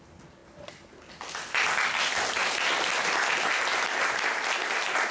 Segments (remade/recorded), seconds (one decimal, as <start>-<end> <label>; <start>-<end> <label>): 0.0-5.1 recorded